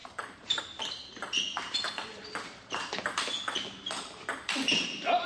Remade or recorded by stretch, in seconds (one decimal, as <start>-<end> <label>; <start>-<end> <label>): 0.0-0.6 remade; 0.6-5.3 recorded